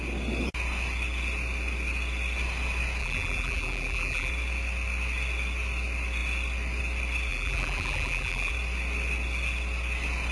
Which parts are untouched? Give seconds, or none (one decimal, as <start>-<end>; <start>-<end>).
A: 0.0-3.0; 4.3-7.3; 8.5-10.3